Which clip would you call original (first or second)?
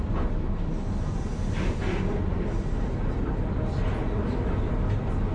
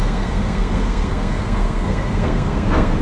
first